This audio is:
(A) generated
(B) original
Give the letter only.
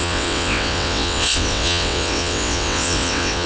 A